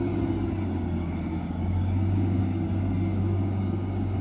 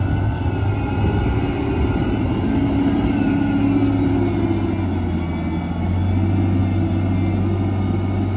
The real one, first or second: second